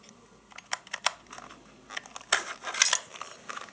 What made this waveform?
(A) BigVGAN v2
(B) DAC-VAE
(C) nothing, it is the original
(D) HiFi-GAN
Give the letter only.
C